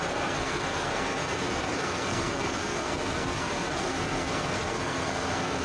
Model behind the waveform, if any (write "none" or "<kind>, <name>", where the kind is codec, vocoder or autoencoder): codec, SNAC